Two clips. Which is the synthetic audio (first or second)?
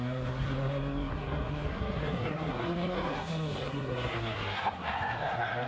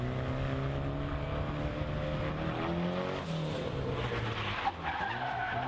first